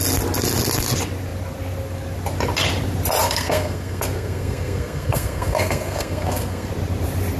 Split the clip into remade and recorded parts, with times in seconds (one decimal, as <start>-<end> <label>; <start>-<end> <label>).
0.0-3.2 recorded; 3.2-6.7 remade; 6.7-7.4 recorded